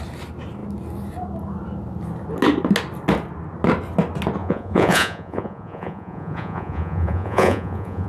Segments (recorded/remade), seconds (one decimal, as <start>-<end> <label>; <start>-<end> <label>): 0.0-4.4 recorded; 4.4-8.1 remade